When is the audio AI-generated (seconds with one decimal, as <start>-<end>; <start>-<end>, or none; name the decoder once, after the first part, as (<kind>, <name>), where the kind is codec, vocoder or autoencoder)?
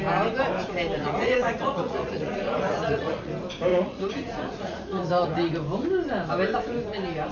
1.0-3.3 (vocoder, Vocos); 3.7-5.5